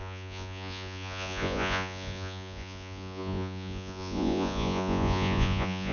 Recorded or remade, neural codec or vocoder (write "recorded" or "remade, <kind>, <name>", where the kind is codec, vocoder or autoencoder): remade, vocoder, Vocos